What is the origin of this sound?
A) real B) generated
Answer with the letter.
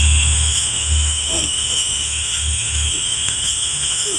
B